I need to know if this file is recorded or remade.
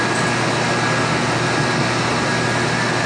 recorded